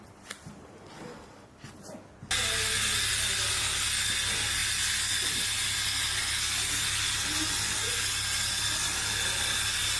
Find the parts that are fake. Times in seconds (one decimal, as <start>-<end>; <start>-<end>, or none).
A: none